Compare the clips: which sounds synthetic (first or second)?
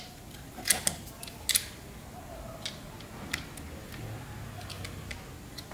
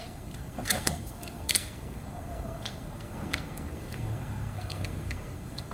second